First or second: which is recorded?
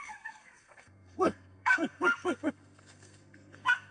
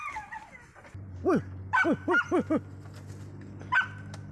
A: second